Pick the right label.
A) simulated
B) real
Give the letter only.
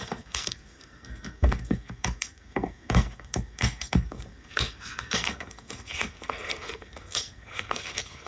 A